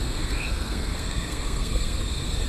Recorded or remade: remade